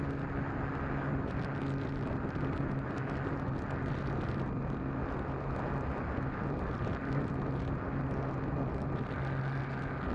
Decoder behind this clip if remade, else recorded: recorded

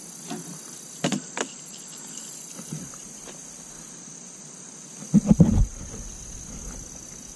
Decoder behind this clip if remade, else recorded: recorded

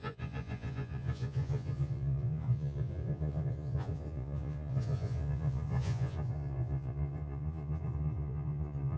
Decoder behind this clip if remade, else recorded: remade, vocoder, Vocos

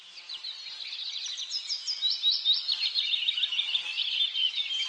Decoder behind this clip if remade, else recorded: recorded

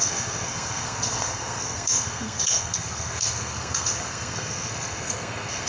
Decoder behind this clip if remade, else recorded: remade, codec, SNAC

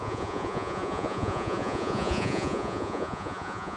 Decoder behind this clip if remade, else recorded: remade, vocoder, Vocos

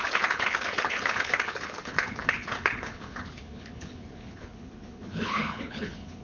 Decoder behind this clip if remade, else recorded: remade, codec, HILCodec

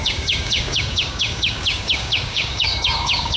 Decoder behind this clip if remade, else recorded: remade, codec, DAC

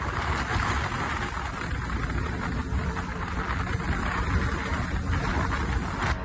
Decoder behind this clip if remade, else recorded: recorded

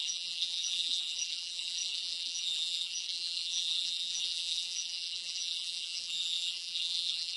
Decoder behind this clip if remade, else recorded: remade, vocoder, BigVGAN v2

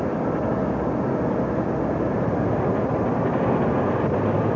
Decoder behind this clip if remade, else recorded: recorded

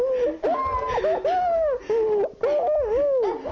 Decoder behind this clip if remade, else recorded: recorded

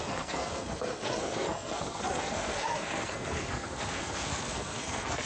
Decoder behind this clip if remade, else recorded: remade, codec, SNAC